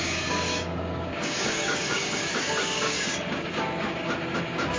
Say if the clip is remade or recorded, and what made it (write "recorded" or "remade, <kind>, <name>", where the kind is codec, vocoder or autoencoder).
remade, codec, DAC